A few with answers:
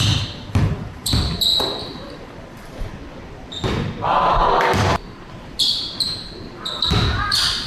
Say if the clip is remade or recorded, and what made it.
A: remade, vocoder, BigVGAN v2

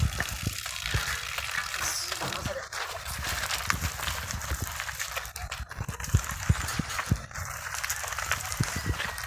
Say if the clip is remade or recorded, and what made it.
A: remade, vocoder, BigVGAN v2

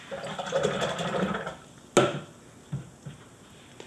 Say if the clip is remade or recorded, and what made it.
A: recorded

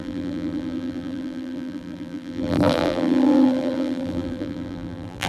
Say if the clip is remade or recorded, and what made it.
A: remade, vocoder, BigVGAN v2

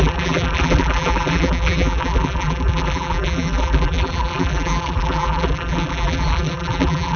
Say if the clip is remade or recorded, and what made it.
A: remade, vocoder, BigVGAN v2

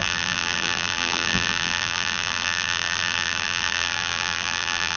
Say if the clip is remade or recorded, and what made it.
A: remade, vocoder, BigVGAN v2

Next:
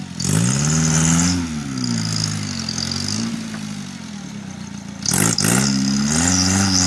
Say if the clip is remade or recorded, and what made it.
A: recorded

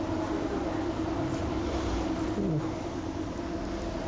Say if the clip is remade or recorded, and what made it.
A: recorded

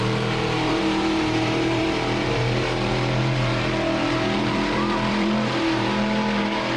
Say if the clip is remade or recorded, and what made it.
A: remade, vocoder, BigVGAN v2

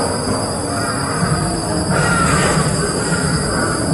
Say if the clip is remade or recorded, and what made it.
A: recorded